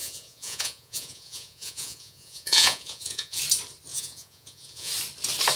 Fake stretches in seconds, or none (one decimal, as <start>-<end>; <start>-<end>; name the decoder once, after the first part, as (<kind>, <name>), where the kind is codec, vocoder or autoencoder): 0.0-3.4 (vocoder, Vocos); 3.9-4.9